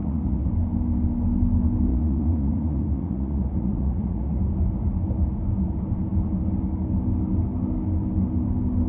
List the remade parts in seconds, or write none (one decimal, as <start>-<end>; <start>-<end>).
0.0-0.5; 1.9-4.4